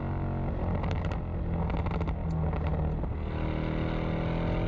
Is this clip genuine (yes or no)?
yes